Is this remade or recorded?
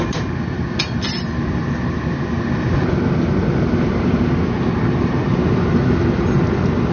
recorded